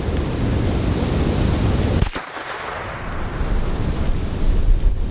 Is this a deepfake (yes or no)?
no